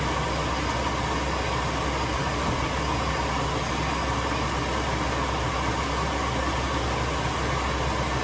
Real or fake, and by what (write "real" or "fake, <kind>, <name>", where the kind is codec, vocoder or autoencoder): real